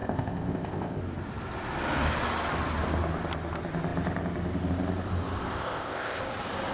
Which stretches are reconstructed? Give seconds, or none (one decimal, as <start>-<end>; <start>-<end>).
0.0-1.0; 5.5-6.2